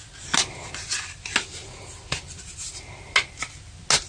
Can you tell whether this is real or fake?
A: real